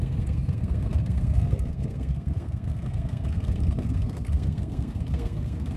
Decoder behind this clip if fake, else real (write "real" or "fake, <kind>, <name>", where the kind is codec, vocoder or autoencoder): fake, codec, SNAC